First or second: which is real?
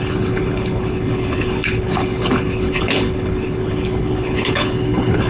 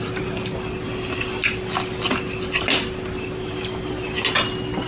second